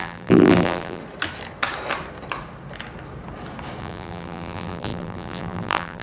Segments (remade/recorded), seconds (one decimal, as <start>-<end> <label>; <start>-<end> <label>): 0.0-1.0 remade; 1.0-3.8 recorded; 3.8-6.0 remade